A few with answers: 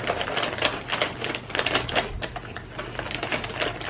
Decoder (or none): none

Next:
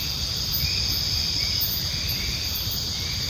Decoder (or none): vocoder, BigVGAN v2